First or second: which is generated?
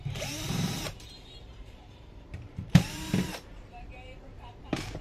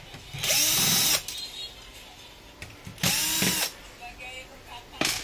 first